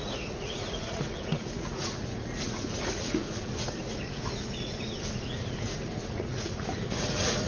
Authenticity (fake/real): fake